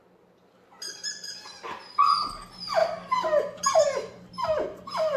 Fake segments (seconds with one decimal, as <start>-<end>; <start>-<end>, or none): none